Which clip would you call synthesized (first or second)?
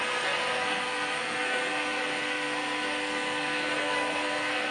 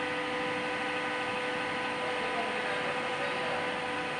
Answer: first